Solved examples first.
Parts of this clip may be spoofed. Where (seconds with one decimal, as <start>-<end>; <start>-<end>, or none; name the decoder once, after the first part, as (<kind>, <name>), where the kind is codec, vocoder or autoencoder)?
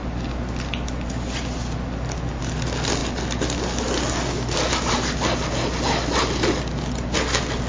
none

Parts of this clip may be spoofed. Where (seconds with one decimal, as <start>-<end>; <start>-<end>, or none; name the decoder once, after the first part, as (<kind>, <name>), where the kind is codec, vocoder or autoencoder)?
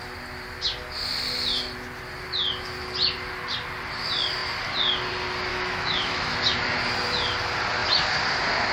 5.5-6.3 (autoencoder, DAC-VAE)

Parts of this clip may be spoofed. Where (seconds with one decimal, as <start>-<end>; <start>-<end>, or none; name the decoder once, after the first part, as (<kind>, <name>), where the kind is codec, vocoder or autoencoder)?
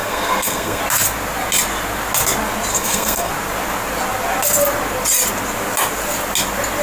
0.0-0.8 (codec, SNAC); 2.7-3.3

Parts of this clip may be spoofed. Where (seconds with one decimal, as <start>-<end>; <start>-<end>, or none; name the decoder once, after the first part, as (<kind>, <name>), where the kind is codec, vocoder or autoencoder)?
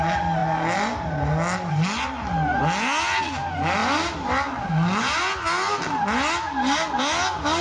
none